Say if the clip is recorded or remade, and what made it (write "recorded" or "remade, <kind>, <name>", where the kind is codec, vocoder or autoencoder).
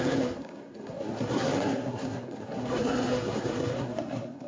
remade, codec, SNAC